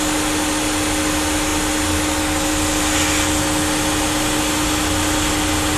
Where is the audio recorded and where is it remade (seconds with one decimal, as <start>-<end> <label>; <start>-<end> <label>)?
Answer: 0.0-5.8 recorded

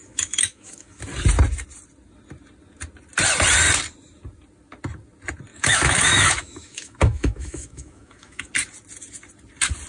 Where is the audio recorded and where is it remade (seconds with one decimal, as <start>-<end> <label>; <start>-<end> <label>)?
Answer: 0.0-1.0 remade; 1.0-5.5 recorded; 5.5-8.5 remade; 8.5-9.9 recorded

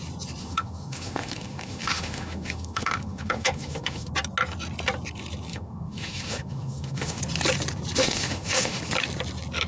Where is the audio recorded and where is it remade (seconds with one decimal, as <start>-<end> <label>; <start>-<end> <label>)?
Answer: 0.0-0.4 recorded; 0.4-4.1 remade; 4.1-5.5 recorded; 5.5-7.2 remade; 7.2-8.0 recorded; 8.0-8.8 remade; 8.8-9.7 recorded